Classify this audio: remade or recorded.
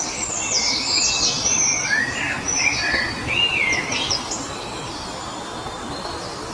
recorded